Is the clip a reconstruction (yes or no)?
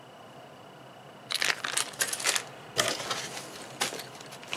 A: no